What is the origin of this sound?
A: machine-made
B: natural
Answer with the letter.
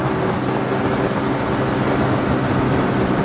B